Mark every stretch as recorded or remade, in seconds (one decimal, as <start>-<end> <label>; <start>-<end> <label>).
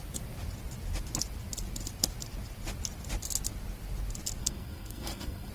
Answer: 0.0-4.4 recorded; 4.4-5.5 remade